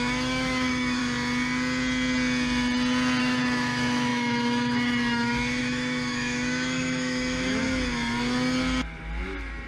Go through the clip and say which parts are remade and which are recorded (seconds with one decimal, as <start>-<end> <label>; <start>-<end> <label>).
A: 0.0-1.0 remade; 1.0-3.2 recorded; 3.2-7.6 remade; 7.6-9.7 recorded